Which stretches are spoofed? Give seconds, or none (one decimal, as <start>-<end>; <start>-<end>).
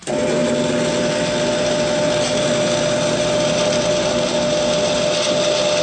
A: none